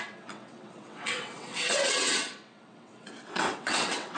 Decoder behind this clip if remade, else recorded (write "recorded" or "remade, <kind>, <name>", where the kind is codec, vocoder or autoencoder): remade, vocoder, WaveNeXt